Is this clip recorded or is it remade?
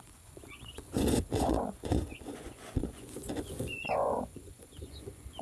remade